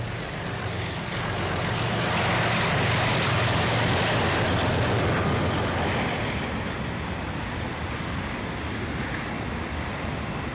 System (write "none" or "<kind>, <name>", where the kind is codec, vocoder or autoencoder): none